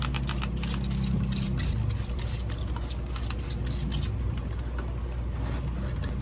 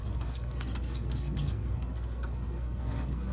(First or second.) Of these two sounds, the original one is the first